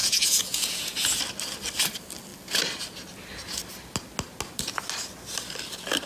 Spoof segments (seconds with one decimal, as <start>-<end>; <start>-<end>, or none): 0.0-1.2